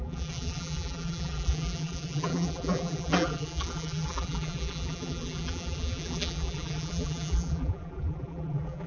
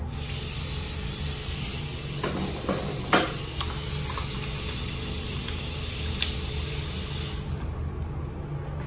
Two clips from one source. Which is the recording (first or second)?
second